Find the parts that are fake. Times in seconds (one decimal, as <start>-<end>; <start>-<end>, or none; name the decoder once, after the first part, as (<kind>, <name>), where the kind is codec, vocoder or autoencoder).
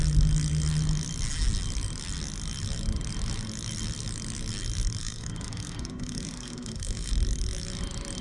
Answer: 5.0-7.1 (codec, SNAC)